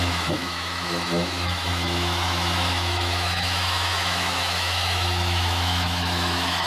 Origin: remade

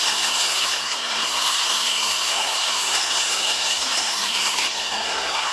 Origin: remade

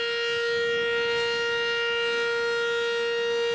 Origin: recorded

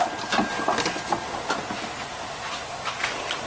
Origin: recorded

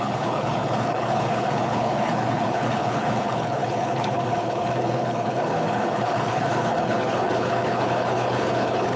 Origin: remade